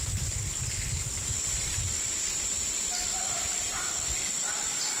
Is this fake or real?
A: real